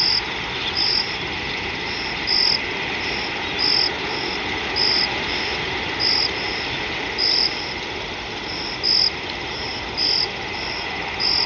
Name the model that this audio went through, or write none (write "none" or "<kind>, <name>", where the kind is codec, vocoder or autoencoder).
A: none